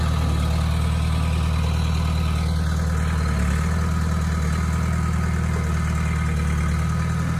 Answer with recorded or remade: recorded